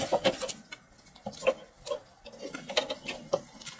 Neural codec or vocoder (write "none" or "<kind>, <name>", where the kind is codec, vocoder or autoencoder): none